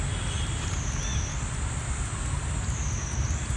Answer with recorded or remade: recorded